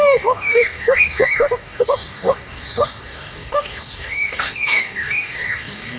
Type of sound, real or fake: fake